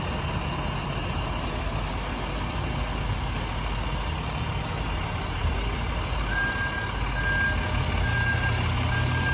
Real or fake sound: real